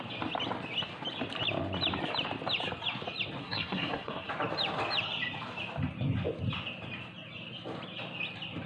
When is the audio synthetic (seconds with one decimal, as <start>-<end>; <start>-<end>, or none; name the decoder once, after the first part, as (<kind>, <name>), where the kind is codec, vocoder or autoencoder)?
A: 3.4-4.3 (codec, SNAC)